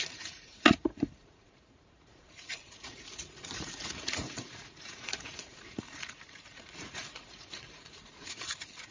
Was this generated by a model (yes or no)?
yes